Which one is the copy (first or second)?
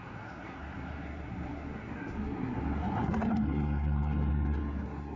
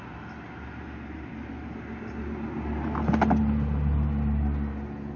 first